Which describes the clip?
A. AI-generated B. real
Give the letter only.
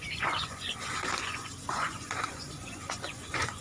A